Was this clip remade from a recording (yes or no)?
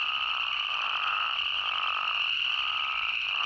no